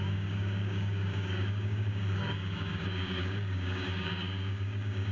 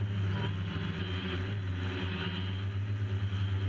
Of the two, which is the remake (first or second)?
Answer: first